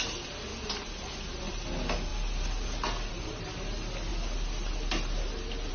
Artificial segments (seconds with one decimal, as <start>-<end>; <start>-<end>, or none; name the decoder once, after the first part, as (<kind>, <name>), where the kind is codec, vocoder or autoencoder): none